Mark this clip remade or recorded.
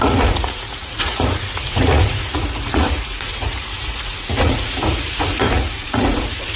remade